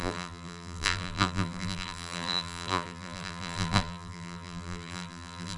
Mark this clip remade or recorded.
remade